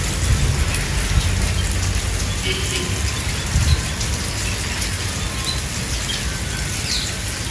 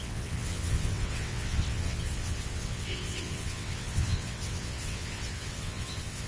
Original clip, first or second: first